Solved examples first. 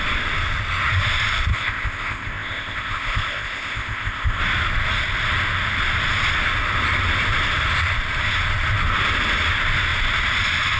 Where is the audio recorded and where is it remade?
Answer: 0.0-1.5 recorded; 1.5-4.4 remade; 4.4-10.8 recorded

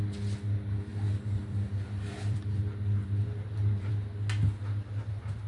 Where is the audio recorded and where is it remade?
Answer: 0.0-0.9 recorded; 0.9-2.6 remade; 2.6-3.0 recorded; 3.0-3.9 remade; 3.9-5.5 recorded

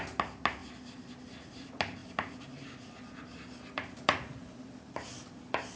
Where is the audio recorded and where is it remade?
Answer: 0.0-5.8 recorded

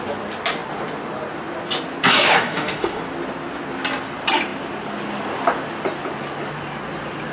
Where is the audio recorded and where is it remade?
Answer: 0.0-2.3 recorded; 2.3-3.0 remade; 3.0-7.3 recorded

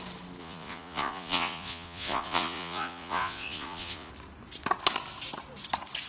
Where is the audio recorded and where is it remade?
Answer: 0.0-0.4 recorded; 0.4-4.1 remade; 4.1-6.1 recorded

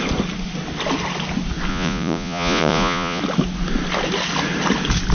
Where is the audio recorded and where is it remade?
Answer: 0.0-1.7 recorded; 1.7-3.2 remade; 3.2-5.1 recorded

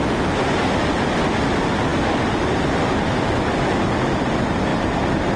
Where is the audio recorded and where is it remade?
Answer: 0.0-4.7 recorded; 4.7-5.4 remade